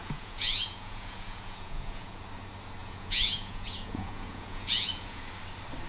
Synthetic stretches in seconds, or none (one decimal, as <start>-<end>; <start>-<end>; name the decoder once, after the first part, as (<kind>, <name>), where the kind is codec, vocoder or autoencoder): 0.0-2.2 (vocoder, Vocos); 2.8-5.3